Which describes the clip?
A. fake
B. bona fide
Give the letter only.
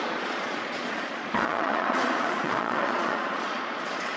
A